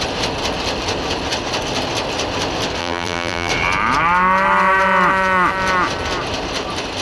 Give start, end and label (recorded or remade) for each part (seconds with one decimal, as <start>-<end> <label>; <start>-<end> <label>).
0.0-2.8 recorded; 2.8-3.5 remade; 3.5-7.0 recorded